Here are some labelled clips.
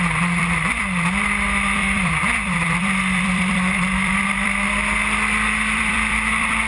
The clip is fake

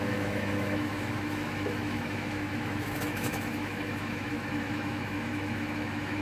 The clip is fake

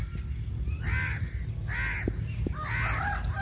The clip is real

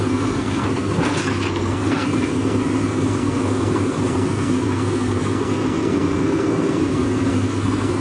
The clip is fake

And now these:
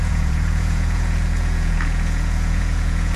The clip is fake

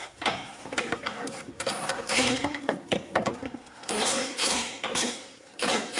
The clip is fake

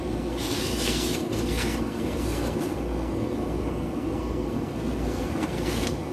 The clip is fake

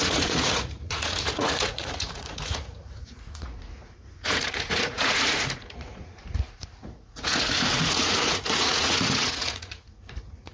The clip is fake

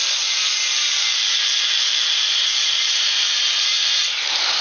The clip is fake